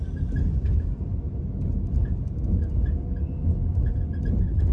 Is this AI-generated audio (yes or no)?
no